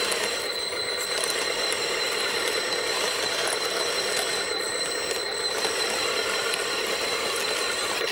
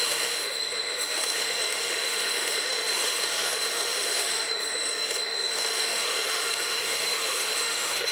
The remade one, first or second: second